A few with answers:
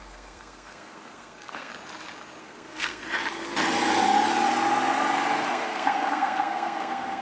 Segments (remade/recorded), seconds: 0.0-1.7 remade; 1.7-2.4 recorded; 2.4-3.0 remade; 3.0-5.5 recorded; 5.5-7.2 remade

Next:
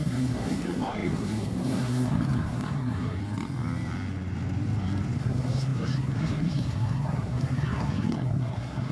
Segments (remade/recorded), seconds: 0.0-3.2 remade; 3.2-5.2 recorded; 5.2-8.9 remade